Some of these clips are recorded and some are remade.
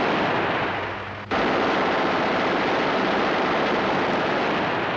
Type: recorded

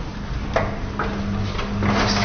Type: recorded